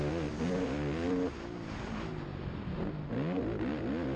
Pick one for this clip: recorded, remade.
recorded